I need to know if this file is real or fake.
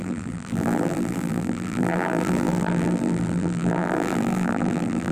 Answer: fake